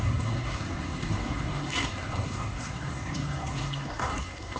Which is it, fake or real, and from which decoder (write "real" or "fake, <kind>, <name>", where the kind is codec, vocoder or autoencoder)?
fake, codec, SNAC